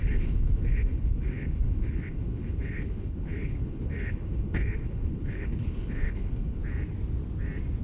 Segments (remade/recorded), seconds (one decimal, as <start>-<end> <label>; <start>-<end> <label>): 0.0-6.6 remade; 6.6-7.8 recorded